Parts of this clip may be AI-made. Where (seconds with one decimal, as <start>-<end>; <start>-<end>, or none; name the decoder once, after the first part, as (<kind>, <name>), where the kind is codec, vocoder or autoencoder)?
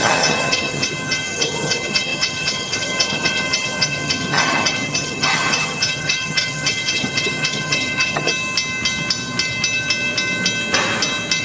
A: 0.0-8.3 (vocoder, HiFi-GAN)